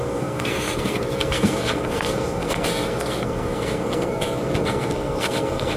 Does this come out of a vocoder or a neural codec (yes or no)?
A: yes